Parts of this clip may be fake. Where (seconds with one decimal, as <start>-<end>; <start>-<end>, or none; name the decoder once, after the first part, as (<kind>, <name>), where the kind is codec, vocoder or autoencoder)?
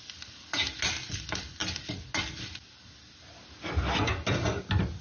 none